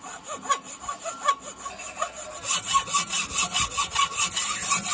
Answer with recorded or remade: recorded